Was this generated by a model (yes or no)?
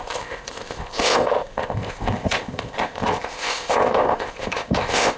yes